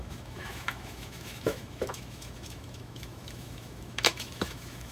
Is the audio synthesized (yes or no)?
yes